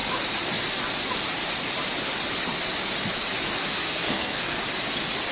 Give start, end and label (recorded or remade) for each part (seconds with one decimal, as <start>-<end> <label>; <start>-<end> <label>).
0.0-3.6 recorded; 3.6-4.6 remade; 4.6-5.3 recorded